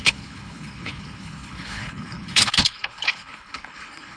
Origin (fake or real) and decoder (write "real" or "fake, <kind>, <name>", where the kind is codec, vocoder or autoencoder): fake, codec, HILCodec